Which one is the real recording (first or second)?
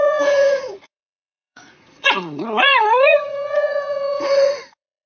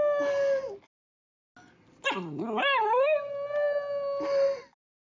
second